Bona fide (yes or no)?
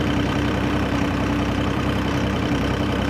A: no